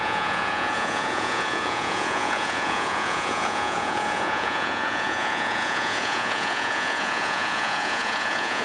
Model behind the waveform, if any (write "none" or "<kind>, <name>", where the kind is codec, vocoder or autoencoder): vocoder, Vocos